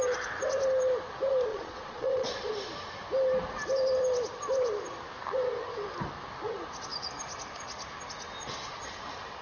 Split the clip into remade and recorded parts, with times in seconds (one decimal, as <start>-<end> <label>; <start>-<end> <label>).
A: 0.0-1.5 recorded; 1.5-2.5 remade; 2.5-9.4 recorded